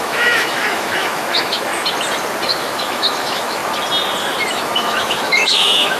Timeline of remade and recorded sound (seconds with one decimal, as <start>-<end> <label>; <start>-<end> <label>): 0.0-1.7 remade; 1.7-2.5 recorded; 2.5-3.6 remade; 3.6-4.5 recorded; 4.5-6.0 remade